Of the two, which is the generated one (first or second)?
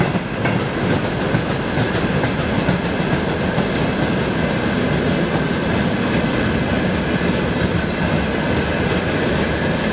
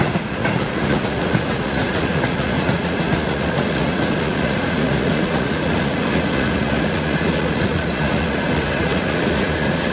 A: second